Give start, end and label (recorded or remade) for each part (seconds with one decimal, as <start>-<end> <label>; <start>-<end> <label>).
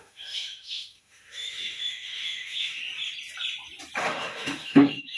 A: 0.0-2.8 remade; 2.8-4.0 recorded; 4.0-5.2 remade